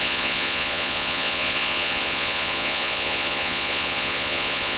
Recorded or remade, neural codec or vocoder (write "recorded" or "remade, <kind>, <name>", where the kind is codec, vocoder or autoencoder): remade, vocoder, Vocos